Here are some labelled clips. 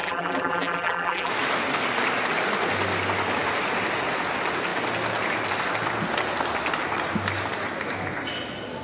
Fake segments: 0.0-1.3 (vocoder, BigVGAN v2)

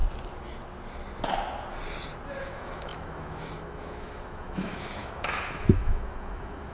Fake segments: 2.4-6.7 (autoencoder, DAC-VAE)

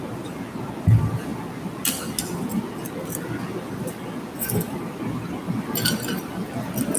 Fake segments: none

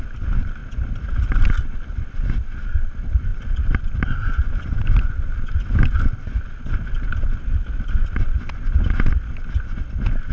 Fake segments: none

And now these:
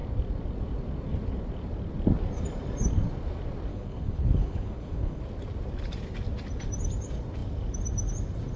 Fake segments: 3.7-5.2 (codec, HILCodec)

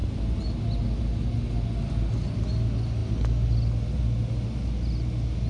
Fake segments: none

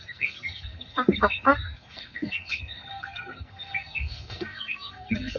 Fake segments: 0.0-5.4 (codec, SNAC)

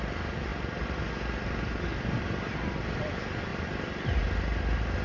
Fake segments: none